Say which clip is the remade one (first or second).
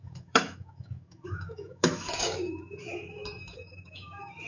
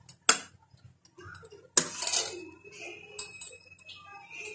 first